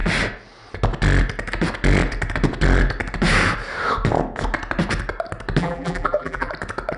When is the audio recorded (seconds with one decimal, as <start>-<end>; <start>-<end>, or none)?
0.0-5.6; 6.5-7.0